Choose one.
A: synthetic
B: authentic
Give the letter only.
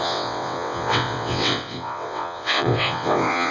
A